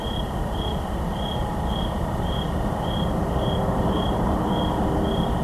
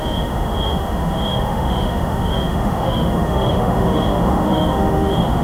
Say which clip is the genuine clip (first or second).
first